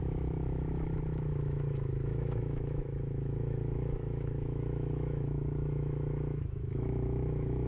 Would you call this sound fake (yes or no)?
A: yes